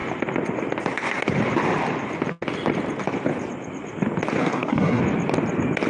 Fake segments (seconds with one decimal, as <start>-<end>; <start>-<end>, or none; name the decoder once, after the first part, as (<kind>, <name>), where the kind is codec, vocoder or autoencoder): 4.4-5.0 (codec, SNAC)